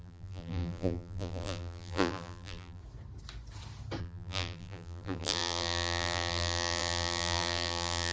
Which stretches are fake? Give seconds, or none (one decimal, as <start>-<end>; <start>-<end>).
0.0-2.8; 4.0-8.1